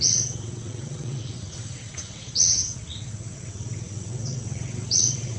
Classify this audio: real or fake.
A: fake